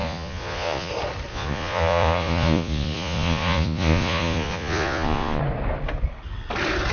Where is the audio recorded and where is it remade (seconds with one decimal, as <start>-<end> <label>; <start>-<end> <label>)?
0.0-0.9 remade; 0.9-1.3 recorded; 1.3-5.4 remade; 5.4-6.9 recorded